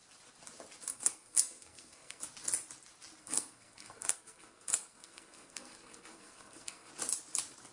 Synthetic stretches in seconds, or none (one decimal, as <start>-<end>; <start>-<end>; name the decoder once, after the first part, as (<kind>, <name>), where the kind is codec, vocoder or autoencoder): 0.9-2.2 (codec, SNAC); 3.2-6.9